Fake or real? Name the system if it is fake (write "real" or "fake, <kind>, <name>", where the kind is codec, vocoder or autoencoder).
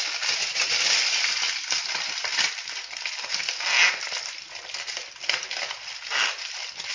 real